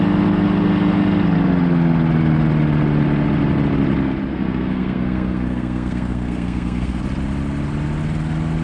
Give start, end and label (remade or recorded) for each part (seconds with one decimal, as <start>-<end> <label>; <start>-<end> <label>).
0.0-4.3 recorded; 4.3-7.0 remade; 7.0-8.6 recorded